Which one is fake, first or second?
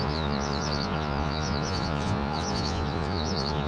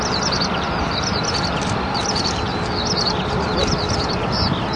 first